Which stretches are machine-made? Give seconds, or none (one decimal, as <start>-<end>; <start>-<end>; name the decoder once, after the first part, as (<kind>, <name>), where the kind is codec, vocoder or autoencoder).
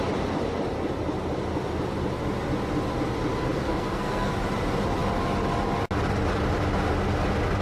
3.6-4.3 (codec, SNAC)